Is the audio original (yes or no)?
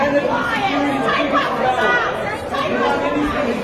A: yes